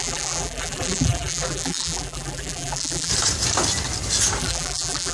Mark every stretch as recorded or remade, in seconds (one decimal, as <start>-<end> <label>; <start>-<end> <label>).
0.0-3.1 remade; 3.1-4.4 recorded; 4.4-5.1 remade